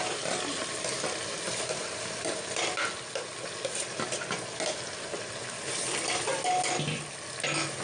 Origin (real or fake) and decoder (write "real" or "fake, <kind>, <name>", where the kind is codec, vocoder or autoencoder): real